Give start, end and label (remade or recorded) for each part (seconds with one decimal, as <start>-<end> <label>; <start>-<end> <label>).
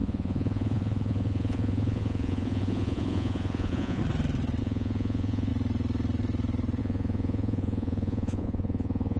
0.0-4.0 remade; 4.0-4.6 recorded; 4.6-5.5 remade; 5.5-6.8 recorded; 6.8-9.2 remade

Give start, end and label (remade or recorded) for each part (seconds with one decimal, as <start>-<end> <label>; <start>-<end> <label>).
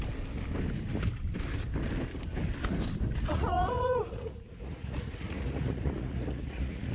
0.0-3.3 recorded; 3.3-6.9 remade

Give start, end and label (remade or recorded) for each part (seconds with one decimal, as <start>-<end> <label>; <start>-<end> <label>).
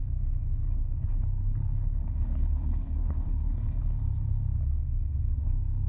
0.0-0.8 recorded; 0.8-3.8 remade; 3.8-5.9 recorded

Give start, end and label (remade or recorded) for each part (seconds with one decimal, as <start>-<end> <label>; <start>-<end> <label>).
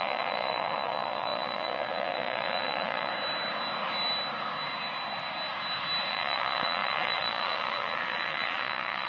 0.0-3.1 remade; 3.1-6.1 recorded; 6.1-9.1 remade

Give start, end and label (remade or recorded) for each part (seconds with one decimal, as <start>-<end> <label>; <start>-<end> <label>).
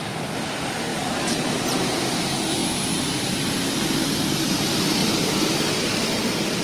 0.0-0.9 recorded; 0.9-2.2 remade; 2.2-2.6 recorded; 2.6-3.5 remade; 3.5-5.0 recorded; 5.0-5.7 remade; 5.7-6.6 recorded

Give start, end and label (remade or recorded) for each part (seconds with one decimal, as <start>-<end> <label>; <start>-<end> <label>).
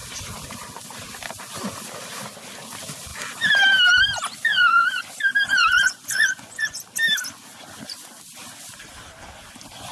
0.0-4.5 recorded; 4.5-5.0 remade; 5.0-5.5 recorded; 5.5-6.8 remade; 6.8-9.9 recorded